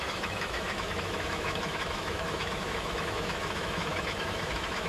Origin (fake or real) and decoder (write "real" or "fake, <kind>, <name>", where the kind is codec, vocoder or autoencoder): fake, autoencoder, DAC-VAE